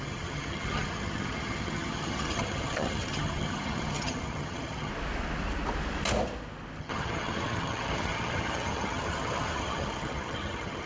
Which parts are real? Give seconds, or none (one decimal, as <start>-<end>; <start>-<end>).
4.9-6.8